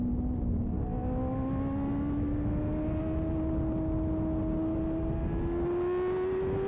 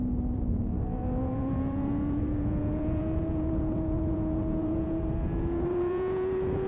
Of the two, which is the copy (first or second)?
second